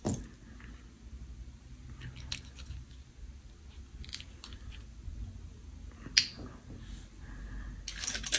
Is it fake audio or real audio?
real